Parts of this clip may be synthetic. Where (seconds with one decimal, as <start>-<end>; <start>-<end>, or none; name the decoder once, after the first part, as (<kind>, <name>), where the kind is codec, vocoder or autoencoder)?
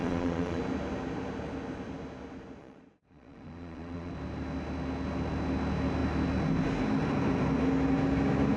0.0-0.6 (vocoder, Vocos); 2.6-4.1